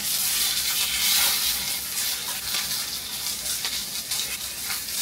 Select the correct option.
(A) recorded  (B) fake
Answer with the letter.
A